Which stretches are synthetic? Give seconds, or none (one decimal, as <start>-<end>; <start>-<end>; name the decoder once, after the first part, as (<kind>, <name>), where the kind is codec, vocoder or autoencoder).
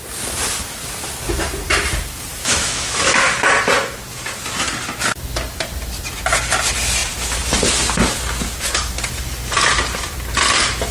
2.4-3.2 (autoencoder, DAC-VAE)